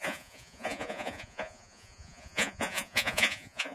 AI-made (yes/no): yes